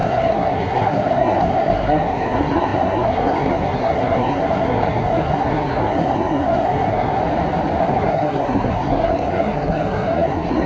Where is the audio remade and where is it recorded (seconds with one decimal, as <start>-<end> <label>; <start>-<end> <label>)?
0.0-7.2 remade; 7.2-7.8 recorded; 7.8-10.7 remade